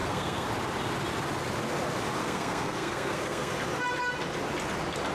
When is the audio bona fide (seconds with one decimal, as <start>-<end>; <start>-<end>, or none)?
0.5-2.2; 3.5-5.1